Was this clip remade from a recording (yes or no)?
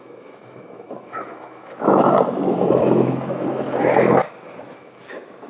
yes